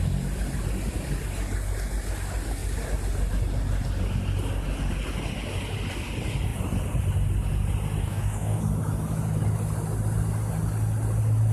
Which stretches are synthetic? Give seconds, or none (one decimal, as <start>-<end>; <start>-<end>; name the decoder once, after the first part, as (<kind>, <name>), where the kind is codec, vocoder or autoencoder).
8.0-8.6 (codec, DAC)